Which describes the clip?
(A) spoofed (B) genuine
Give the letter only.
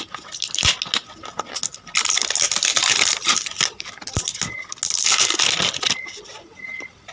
B